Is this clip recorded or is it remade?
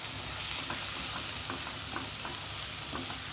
recorded